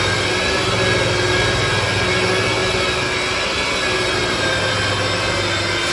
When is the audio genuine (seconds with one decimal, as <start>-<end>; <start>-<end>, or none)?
0.0-5.9